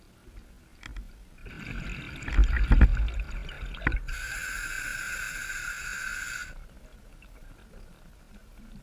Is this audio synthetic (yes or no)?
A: no